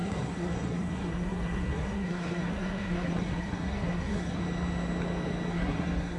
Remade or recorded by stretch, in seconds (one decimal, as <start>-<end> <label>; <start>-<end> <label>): 0.0-4.4 remade; 4.4-5.5 recorded; 5.5-6.2 remade